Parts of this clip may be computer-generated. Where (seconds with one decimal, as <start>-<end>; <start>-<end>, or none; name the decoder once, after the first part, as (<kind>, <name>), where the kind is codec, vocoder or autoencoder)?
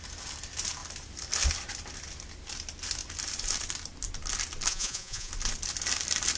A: 4.7-5.3 (vocoder, Vocos)